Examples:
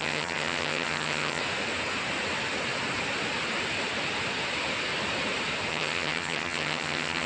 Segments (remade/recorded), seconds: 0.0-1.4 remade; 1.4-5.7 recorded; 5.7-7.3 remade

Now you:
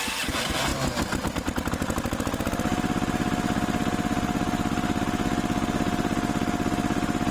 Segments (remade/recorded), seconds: 0.0-7.3 recorded

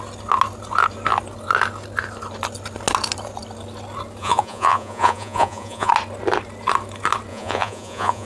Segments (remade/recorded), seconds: 0.0-4.2 recorded; 4.2-5.9 remade; 5.9-7.3 recorded; 7.3-8.3 remade

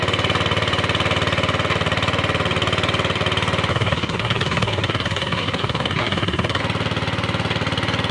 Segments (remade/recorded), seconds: 0.0-3.7 recorded; 3.7-6.6 remade; 6.6-8.1 recorded

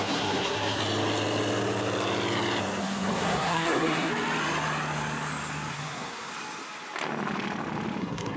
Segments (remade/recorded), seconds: 0.0-0.8 remade; 0.8-2.8 recorded; 2.8-4.1 remade; 4.1-5.7 recorded; 5.7-6.3 remade; 6.3-8.0 recorded; 8.0-8.4 remade

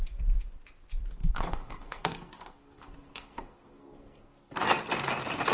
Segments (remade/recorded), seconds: 0.0-1.2 recorded; 1.2-4.5 remade; 4.5-5.5 recorded

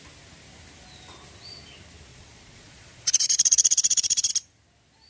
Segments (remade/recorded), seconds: 0.0-2.1 recorded; 2.1-4.3 remade; 4.3-5.1 recorded

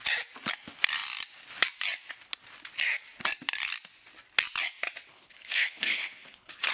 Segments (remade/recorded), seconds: 0.0-5.1 recorded; 5.1-6.7 remade